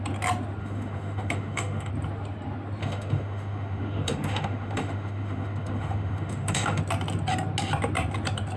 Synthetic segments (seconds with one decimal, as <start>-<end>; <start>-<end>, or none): 0.6-1.9; 2.8-6.8